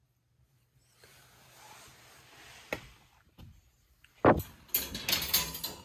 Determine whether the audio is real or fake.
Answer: real